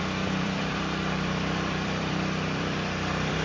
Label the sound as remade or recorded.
remade